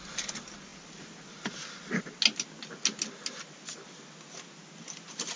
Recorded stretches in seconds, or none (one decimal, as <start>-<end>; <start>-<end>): 0.0-5.4